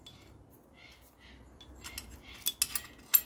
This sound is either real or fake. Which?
real